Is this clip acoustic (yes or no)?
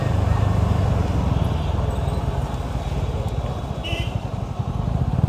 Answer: yes